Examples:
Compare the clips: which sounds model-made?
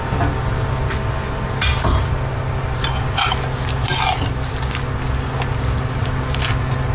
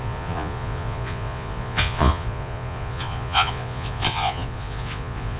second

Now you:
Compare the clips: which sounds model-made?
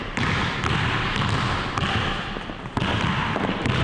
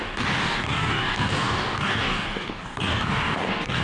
second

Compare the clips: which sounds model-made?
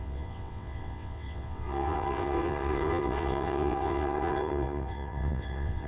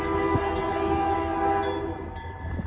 first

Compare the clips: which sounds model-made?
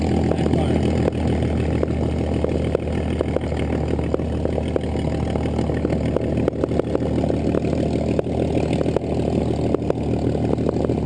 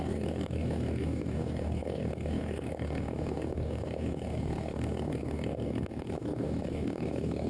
second